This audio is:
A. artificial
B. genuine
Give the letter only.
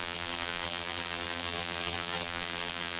A